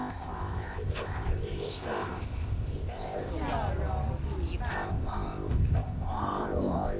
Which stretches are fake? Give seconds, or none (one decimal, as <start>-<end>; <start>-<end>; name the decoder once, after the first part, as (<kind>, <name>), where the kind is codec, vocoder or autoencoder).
0.0-3.3 (codec, ZipCodec); 4.7-7.0